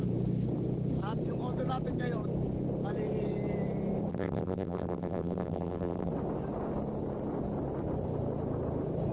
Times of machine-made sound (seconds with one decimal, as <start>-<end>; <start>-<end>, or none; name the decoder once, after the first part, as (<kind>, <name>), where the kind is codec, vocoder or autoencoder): 4.1-6.1 (vocoder, BigVGAN v2)